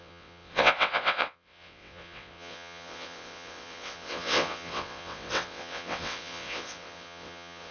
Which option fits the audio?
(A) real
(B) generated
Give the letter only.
B